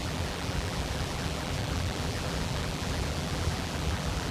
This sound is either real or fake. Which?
fake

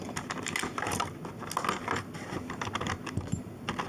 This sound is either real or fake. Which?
real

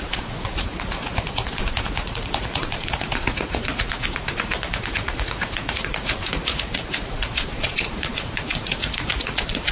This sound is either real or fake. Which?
fake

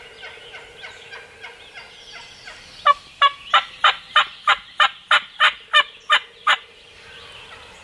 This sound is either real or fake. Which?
real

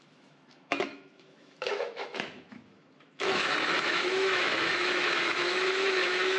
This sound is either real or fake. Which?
fake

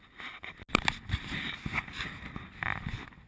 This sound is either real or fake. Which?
real